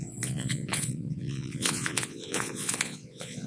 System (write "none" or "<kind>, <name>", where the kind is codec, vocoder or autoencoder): vocoder, Vocos